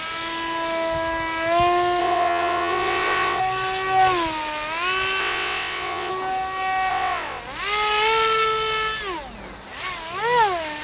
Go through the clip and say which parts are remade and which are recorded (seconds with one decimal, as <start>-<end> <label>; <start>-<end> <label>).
0.0-2.0 recorded; 2.0-3.4 remade; 3.4-5.2 recorded; 5.2-6.1 remade; 6.1-6.9 recorded; 6.9-7.4 remade; 7.4-10.8 recorded